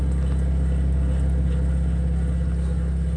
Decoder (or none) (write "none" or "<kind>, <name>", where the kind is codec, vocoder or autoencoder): none